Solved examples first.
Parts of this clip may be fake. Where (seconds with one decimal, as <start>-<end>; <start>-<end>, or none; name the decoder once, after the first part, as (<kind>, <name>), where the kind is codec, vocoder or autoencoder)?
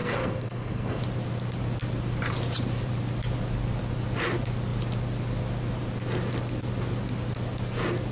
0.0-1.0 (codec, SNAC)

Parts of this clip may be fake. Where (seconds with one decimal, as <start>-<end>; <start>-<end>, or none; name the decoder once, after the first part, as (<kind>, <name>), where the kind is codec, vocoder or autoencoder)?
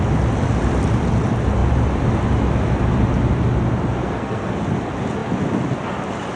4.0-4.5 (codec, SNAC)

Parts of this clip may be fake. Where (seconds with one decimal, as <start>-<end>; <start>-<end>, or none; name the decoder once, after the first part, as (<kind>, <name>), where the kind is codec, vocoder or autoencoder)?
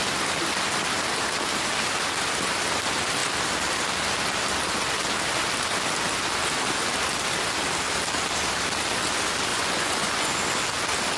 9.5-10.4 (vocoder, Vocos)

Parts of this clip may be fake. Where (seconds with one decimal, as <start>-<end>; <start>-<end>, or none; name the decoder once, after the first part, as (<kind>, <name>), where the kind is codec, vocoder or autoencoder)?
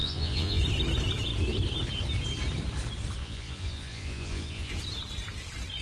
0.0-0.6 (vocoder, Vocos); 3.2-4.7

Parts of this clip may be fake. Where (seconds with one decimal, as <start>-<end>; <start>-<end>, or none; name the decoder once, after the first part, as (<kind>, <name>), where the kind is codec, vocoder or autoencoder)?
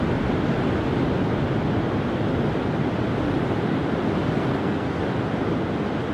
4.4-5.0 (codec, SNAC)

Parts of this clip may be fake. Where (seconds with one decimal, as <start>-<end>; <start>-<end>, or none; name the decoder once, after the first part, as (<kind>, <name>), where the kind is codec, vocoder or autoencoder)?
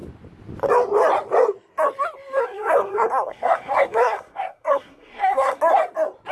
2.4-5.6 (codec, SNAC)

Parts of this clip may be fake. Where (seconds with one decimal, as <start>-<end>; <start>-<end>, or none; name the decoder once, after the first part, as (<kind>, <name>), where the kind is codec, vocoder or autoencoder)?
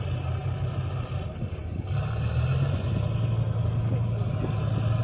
none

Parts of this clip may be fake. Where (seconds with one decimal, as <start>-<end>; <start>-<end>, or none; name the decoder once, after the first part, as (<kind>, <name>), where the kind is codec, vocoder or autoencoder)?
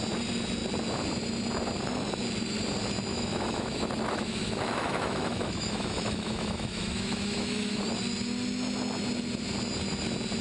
3.1-7.8 (autoencoder, DAC-VAE)